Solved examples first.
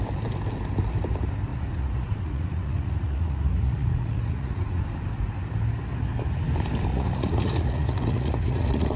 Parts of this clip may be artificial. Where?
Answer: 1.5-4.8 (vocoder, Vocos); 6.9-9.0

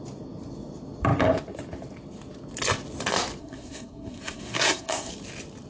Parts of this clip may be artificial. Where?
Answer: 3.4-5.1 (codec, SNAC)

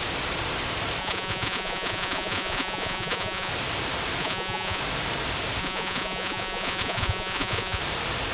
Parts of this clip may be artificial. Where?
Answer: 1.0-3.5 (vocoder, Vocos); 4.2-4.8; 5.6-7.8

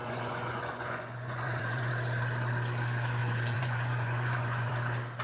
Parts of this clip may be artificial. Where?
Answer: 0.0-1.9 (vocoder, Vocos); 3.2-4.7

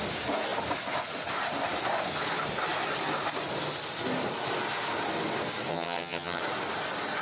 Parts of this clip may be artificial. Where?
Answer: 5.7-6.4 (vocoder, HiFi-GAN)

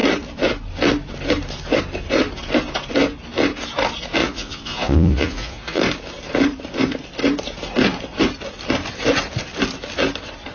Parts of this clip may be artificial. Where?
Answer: 4.2-5.8 (vocoder, Vocos)